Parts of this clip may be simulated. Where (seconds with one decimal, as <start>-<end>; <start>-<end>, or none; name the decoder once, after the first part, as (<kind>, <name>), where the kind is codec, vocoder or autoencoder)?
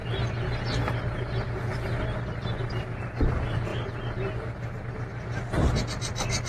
none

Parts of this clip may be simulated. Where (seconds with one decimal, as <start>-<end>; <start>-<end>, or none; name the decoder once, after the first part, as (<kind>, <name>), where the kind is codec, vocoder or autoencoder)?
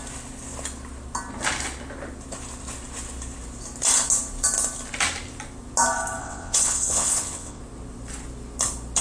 6.2-7.6 (vocoder, WaveNeXt)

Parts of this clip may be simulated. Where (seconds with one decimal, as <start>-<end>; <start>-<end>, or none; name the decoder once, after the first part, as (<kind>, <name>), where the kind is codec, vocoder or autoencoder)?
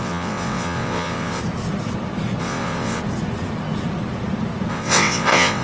0.0-1.4 (vocoder, WaveNeXt); 2.4-3.0; 4.7-5.6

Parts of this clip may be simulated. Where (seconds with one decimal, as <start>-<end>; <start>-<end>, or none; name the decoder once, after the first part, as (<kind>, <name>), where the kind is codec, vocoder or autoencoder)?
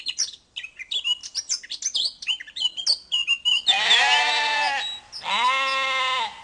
none